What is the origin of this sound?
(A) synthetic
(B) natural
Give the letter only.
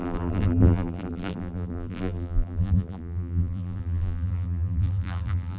A